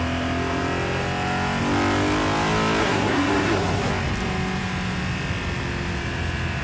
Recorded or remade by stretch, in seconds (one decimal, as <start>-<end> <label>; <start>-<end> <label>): 0.0-2.8 recorded; 2.8-3.9 remade; 3.9-6.6 recorded